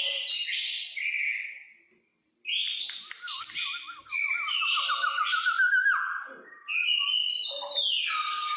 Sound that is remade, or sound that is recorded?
recorded